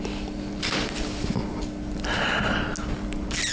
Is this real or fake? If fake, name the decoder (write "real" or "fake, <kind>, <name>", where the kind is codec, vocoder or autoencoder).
real